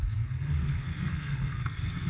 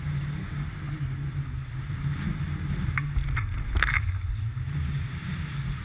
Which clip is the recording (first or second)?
second